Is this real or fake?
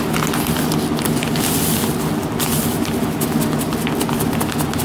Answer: real